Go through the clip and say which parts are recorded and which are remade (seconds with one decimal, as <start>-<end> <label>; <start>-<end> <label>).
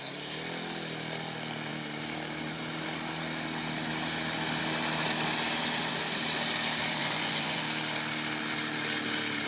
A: 0.0-7.0 recorded; 7.0-7.6 remade; 7.6-9.5 recorded